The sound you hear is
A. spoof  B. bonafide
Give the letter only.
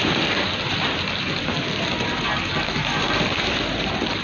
B